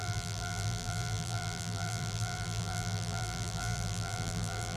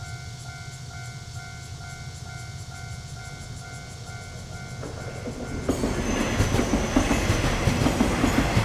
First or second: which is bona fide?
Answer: second